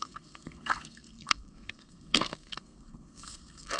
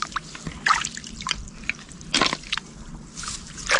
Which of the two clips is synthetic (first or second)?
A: first